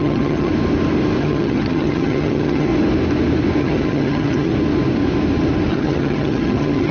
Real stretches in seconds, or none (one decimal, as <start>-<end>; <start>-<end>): 0.5-1.2; 2.7-3.6; 4.5-5.7

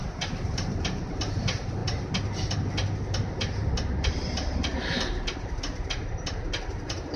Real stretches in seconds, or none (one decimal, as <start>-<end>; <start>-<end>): 1.8-4.1

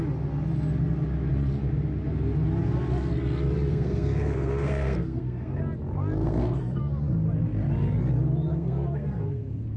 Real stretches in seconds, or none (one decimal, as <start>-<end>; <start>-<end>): 0.0-3.7; 5.6-6.2; 6.8-8.5

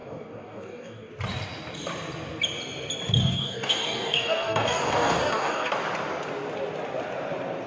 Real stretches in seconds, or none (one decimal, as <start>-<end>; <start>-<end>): 1.1-3.2; 5.7-7.7